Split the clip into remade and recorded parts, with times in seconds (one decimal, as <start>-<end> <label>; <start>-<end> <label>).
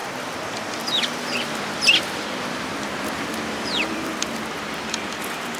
0.0-2.7 remade; 2.7-3.5 recorded; 3.5-5.6 remade